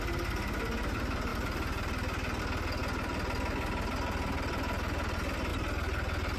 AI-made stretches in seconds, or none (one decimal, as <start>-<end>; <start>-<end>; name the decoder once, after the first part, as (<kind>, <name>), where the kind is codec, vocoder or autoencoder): none